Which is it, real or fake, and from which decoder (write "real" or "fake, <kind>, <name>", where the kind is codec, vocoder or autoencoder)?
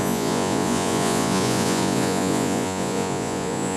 fake, vocoder, Vocos